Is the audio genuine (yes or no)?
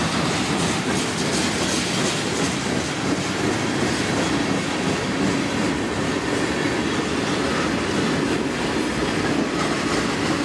yes